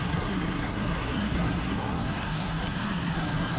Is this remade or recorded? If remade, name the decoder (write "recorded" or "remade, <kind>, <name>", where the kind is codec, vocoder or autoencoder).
remade, codec, SNAC